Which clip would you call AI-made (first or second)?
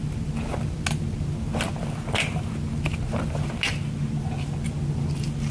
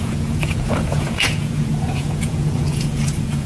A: second